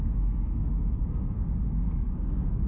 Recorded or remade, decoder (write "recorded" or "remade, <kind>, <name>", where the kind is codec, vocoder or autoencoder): remade, codec, SNAC